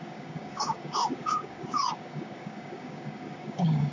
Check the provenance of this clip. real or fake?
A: fake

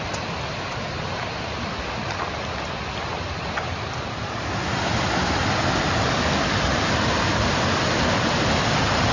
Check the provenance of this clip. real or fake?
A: real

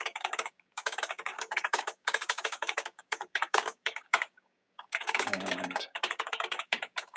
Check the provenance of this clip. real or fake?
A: fake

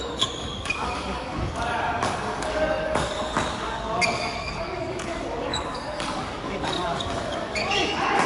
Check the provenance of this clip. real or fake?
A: fake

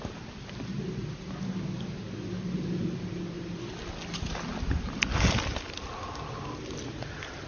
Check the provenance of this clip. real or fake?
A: real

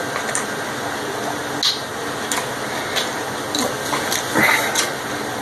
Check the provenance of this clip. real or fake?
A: real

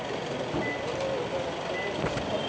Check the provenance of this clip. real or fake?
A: real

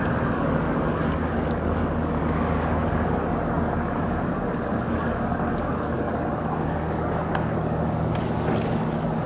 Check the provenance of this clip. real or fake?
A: fake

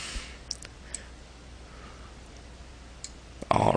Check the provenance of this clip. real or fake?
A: real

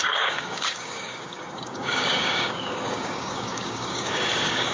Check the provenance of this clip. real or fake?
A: fake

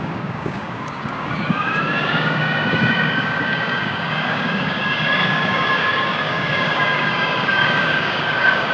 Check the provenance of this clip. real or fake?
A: fake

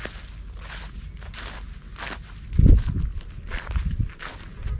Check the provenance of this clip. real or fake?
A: real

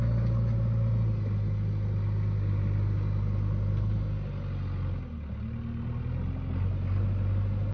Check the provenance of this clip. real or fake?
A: real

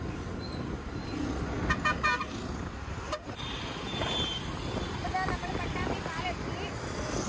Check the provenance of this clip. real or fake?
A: real